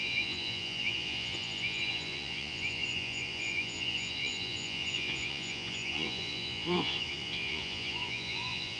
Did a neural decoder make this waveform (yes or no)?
yes